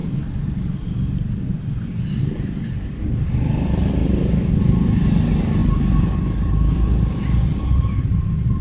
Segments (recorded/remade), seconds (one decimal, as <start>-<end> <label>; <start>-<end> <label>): 0.0-2.2 recorded; 2.2-8.6 remade